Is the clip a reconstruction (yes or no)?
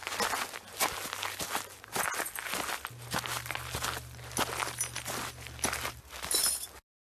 no